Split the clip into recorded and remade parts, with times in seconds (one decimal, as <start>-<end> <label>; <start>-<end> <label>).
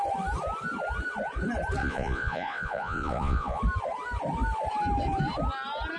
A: 0.0-1.8 recorded; 1.8-3.6 remade; 3.6-6.0 recorded